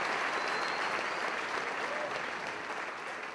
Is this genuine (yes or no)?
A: yes